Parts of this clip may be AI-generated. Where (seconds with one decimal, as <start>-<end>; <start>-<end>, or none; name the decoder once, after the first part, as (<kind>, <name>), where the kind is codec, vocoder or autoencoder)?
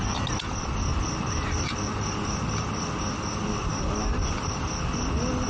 none